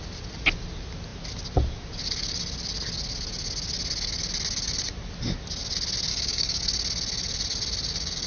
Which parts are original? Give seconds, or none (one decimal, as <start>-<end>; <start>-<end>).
0.0-6.1; 6.6-8.3